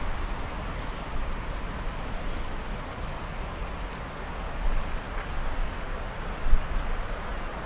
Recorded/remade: recorded